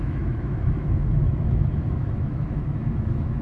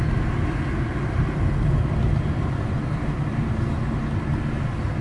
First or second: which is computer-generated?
first